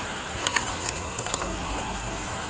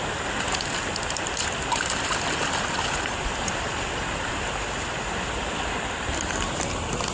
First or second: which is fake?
first